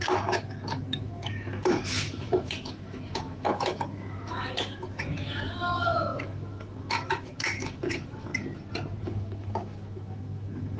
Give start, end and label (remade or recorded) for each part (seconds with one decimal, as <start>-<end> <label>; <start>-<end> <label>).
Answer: 0.0-8.3 remade; 8.3-9.0 recorded; 9.0-10.8 remade